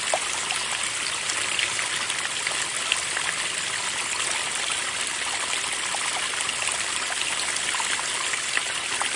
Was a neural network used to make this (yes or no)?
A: no